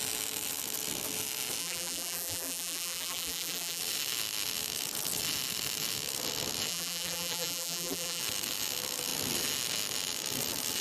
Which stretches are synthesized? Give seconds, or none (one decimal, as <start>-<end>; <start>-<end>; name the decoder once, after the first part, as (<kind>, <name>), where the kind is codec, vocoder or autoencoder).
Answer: 1.6-3.8 (vocoder, BigVGAN v2); 6.7-8.2